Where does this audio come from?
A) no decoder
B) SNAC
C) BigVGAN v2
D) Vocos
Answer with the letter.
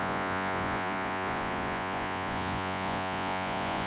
D